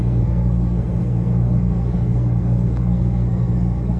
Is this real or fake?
fake